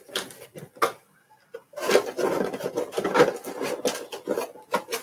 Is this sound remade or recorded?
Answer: recorded